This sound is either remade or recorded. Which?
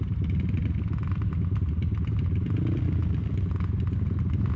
recorded